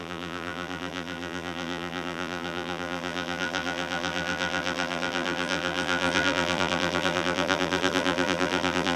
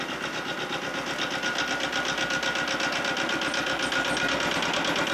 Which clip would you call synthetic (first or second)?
first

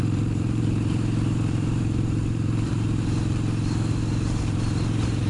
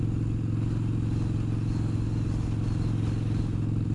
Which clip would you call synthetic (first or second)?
first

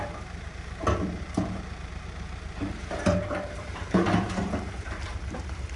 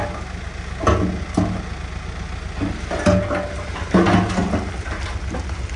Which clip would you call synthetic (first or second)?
first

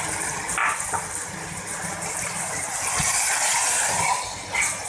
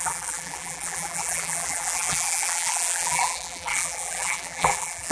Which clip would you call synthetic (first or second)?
second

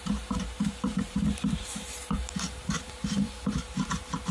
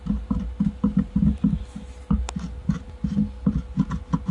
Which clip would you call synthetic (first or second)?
first